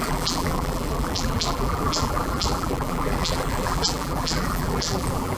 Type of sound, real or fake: fake